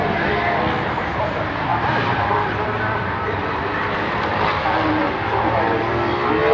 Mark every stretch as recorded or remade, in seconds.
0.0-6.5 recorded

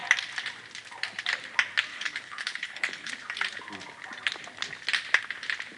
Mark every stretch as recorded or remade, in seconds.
0.0-1.9 recorded; 1.9-3.1 remade; 3.1-5.8 recorded

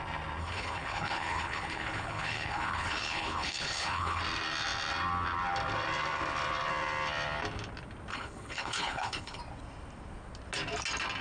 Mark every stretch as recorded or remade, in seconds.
0.0-0.4 recorded; 0.4-4.2 remade; 4.2-8.1 recorded; 8.1-9.4 remade; 9.4-11.2 recorded